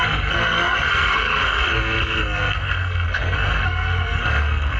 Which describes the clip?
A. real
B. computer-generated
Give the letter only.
B